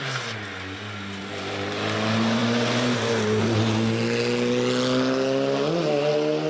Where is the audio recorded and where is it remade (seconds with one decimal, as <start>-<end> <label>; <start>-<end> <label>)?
0.0-6.5 recorded